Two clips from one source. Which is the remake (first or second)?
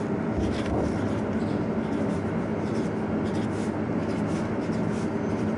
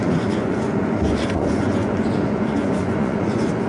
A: second